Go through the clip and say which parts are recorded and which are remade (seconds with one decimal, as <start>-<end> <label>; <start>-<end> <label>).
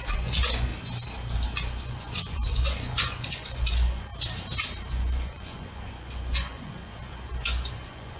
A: 0.0-0.7 remade; 0.7-1.8 recorded; 1.8-4.1 remade; 4.1-4.9 recorded; 4.9-8.2 remade